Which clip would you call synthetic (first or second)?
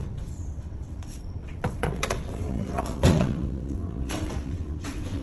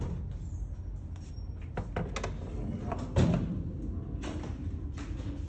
first